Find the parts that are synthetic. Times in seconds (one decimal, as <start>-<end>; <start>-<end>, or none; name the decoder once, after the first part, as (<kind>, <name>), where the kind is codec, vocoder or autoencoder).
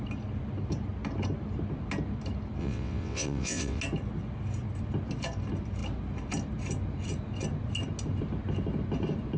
2.6-3.8 (vocoder, WaveNeXt)